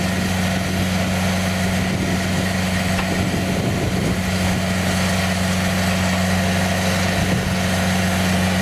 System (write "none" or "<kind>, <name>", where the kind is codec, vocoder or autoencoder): none